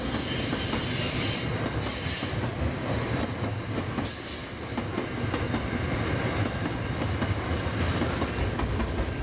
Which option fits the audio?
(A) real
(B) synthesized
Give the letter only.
A